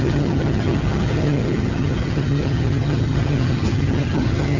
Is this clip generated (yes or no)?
yes